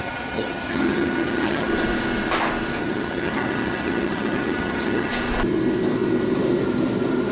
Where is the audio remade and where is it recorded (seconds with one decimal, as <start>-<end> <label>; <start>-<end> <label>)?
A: 0.0-1.7 remade; 1.7-2.8 recorded; 2.8-5.1 remade; 5.1-7.3 recorded